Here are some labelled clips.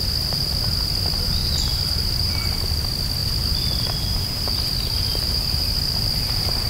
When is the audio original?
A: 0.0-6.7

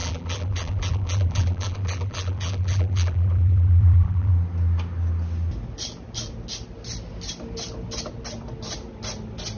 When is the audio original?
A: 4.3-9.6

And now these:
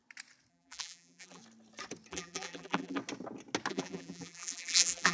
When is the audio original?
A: 0.0-0.5; 1.4-2.1; 3.0-3.7

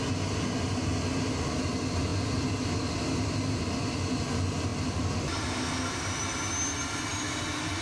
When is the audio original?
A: 0.0-4.7; 6.2-7.1

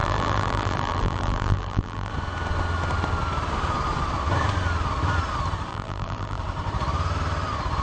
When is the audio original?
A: 2.1-5.7; 6.4-7.8

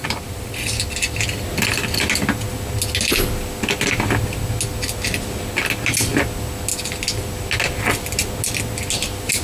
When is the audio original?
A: 0.8-9.4

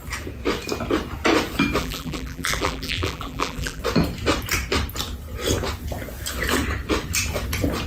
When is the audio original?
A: 0.0-1.8; 3.8-7.9

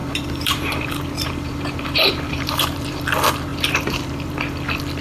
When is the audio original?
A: 3.0-3.5; 4.4-5.0